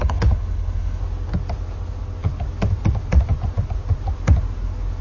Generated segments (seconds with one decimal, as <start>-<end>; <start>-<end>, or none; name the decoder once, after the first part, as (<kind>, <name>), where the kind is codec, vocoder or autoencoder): 0.0-1.0 (codec, HILCodec)